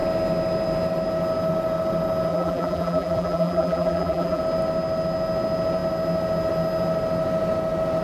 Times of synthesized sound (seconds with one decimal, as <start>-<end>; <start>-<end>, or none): 2.3-4.4